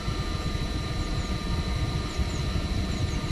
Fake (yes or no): no